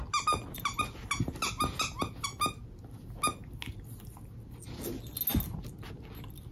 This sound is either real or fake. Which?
real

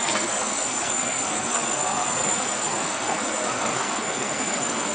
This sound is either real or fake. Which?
fake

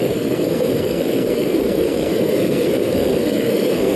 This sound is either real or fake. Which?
fake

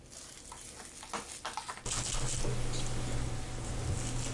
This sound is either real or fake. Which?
real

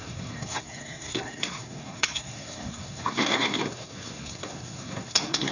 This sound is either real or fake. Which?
fake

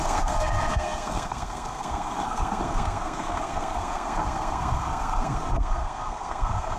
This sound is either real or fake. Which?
fake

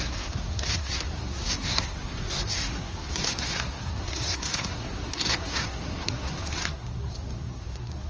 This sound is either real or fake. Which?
fake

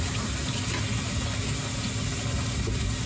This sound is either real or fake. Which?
real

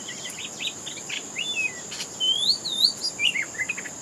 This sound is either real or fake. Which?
real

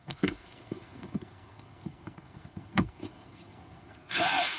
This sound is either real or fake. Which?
fake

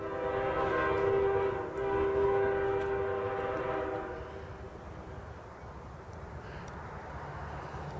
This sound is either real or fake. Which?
real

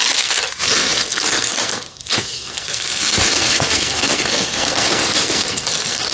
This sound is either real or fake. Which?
fake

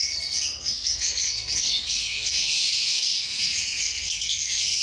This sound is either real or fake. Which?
fake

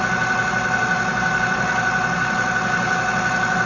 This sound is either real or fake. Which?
real